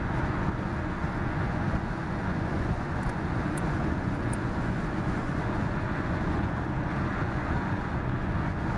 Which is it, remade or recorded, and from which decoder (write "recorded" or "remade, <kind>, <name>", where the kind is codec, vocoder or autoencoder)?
remade, vocoder, Vocos